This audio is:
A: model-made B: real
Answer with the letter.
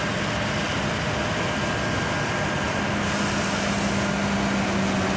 B